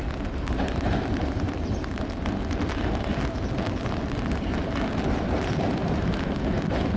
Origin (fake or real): real